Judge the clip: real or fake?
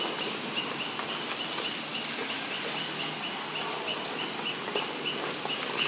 real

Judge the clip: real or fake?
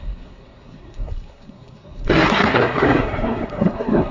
fake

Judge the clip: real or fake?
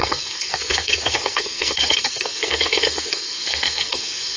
fake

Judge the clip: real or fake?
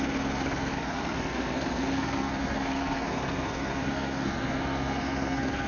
fake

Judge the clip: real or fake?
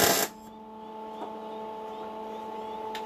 real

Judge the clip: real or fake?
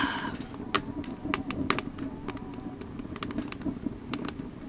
real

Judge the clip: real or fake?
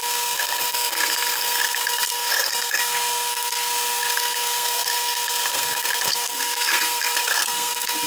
fake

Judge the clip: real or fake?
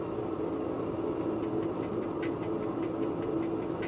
real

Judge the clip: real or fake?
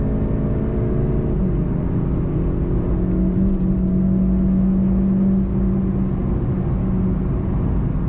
real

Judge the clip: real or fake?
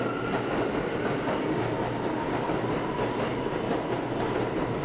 real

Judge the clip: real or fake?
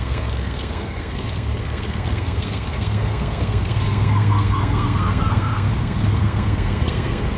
fake